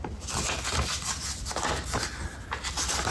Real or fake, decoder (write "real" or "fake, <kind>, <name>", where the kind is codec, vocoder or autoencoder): real